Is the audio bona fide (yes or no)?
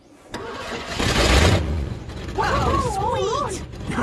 no